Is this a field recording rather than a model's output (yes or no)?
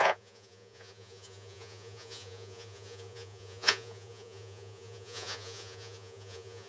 no